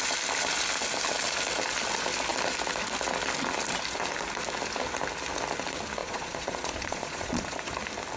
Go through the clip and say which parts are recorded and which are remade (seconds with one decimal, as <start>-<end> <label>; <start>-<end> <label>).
0.0-6.0 recorded; 6.0-7.7 remade; 7.7-8.2 recorded